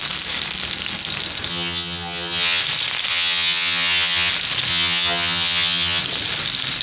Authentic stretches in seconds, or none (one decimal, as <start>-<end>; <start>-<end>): 0.0-1.5; 2.6-3.1; 4.3-4.7; 6.0-6.8

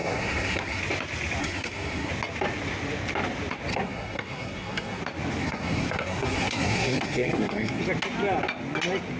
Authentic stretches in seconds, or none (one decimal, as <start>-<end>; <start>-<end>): 0.8-1.4; 2.1-3.7; 5.0-5.4; 7.8-9.2

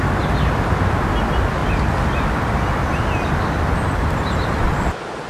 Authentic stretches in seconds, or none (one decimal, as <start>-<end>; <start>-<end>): 0.0-5.3

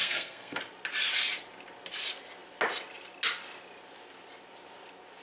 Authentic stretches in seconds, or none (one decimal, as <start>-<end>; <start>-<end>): 0.6-5.2

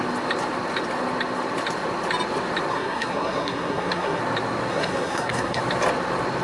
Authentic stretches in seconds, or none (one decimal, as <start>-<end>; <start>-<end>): 0.0-2.7; 4.2-4.7; 5.6-6.4